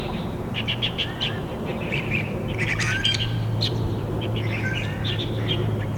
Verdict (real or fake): fake